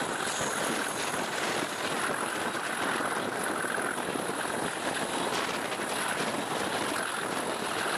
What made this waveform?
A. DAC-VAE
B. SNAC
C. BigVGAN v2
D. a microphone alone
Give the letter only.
D